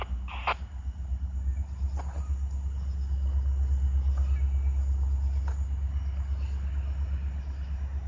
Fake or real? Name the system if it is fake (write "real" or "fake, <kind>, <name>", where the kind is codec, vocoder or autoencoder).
real